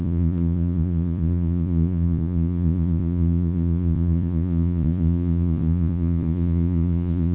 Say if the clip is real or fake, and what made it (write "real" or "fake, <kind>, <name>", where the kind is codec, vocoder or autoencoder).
fake, vocoder, Vocos